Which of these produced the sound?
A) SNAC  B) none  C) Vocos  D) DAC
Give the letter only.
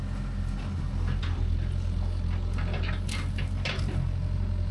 B